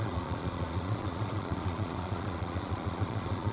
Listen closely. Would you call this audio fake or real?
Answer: fake